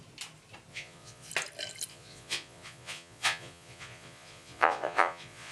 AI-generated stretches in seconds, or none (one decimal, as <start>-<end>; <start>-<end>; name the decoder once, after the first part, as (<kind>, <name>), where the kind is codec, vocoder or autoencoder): 0.7-1.3 (vocoder, Vocos); 1.9-5.5